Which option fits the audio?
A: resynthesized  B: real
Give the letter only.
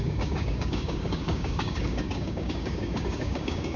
A